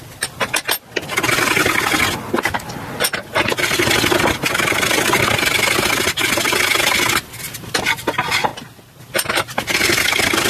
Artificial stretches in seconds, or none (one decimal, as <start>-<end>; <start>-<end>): none